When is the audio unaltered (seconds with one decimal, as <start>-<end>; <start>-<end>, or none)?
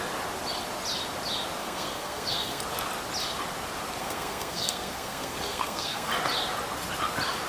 0.0-1.6; 2.6-4.0; 6.1-7.5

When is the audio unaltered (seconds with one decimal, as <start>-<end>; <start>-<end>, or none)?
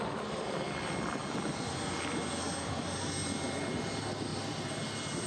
0.0-4.3; 4.8-5.3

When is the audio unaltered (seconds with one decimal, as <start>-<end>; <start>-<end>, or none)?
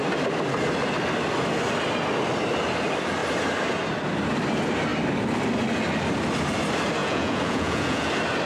0.0-7.0; 8.1-8.5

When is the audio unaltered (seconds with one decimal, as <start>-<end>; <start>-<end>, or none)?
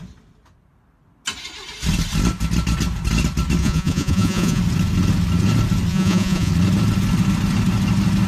0.0-3.6; 4.6-5.9; 6.5-8.3